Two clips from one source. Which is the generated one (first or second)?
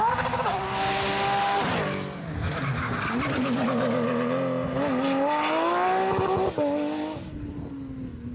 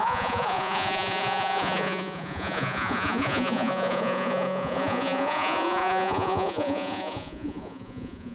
second